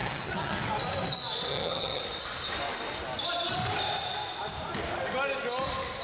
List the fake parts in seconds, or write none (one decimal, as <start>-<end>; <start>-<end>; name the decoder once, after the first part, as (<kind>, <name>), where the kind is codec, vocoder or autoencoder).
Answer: 0.0-0.6 (vocoder, HiFi-GAN); 1.5-2.0